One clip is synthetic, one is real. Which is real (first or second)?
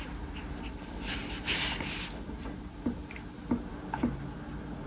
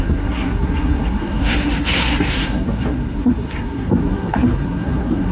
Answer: first